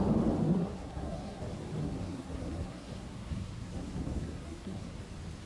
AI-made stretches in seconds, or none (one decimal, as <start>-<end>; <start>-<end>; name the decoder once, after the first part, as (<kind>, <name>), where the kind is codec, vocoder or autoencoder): 0.4-1.4 (codec, SNAC); 1.8-5.0

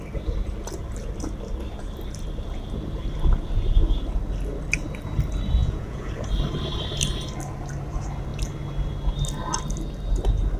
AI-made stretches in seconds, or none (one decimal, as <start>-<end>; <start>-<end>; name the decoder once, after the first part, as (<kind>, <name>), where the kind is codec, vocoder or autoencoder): 5.6-6.1 (vocoder, Vocos)

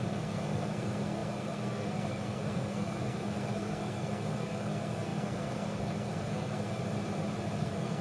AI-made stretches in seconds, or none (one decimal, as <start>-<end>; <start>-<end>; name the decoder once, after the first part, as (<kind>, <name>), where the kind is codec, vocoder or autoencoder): 0.0-6.8 (codec, SNAC); 7.6-8.0